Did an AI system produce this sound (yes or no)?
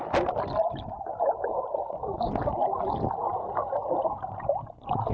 no